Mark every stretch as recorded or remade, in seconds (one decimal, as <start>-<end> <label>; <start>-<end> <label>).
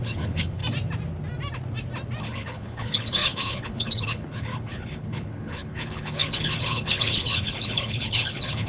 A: 0.0-0.6 remade; 0.6-2.2 recorded; 2.2-8.7 remade